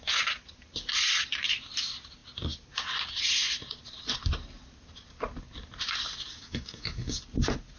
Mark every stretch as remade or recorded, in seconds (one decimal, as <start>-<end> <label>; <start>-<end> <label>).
0.0-6.3 recorded; 6.3-7.2 remade; 7.2-7.8 recorded